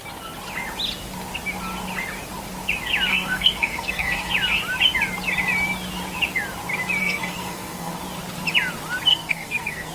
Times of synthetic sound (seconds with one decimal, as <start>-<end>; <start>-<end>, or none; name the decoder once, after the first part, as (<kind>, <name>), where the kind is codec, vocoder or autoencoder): 3.1-4.3 (codec, SNAC); 7.0-8.0; 9.1-9.9